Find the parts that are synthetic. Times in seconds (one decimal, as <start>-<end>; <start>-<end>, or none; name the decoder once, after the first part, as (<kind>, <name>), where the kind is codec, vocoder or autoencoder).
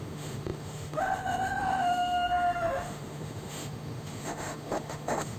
0.0-5.4 (autoencoder, DAC-VAE)